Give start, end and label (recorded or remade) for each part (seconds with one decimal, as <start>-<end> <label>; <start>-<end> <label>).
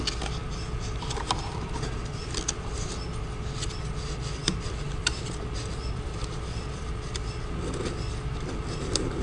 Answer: 0.0-0.4 recorded; 0.4-1.6 remade; 1.6-2.2 recorded; 2.2-3.1 remade; 3.1-4.4 recorded; 4.4-9.2 remade